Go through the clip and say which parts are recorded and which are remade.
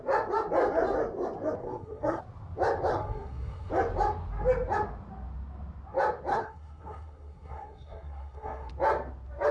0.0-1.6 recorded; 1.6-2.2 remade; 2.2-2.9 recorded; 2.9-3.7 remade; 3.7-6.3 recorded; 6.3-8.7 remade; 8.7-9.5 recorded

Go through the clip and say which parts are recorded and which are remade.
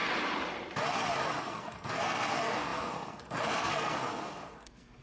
0.0-1.4 recorded; 1.4-5.0 remade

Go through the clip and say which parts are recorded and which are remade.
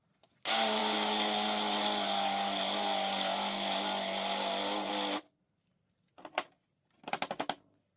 0.0-8.0 recorded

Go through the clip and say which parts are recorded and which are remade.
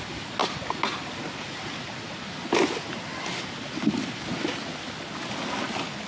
0.0-6.1 recorded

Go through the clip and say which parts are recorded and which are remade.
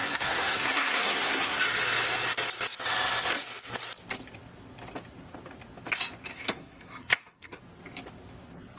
0.0-1.6 remade; 1.6-6.3 recorded; 6.3-7.6 remade; 7.6-8.8 recorded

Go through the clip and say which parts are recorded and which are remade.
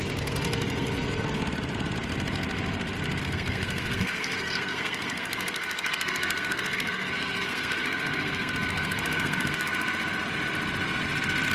0.0-1.4 remade; 1.4-3.2 recorded; 3.2-9.7 remade; 9.7-11.5 recorded